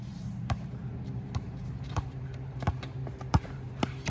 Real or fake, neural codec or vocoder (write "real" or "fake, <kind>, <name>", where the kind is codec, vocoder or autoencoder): fake, vocoder, BigVGAN v2